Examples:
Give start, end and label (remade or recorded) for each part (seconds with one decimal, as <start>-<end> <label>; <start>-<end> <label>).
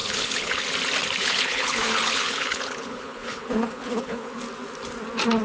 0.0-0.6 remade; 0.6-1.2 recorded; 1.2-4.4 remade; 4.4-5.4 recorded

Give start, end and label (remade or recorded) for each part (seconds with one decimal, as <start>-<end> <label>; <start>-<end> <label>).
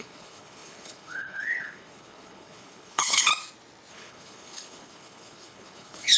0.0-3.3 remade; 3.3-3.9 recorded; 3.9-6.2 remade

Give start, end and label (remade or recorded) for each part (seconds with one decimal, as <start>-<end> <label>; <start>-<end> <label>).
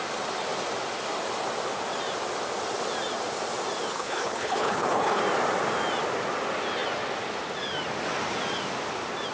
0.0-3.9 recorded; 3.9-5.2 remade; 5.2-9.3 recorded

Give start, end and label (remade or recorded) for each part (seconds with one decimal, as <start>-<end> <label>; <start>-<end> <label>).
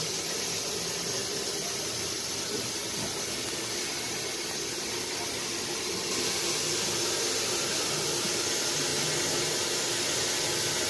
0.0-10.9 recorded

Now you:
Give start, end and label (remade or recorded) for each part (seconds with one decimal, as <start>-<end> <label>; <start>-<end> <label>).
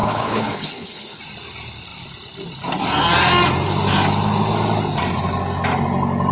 0.0-1.2 remade; 1.2-6.3 recorded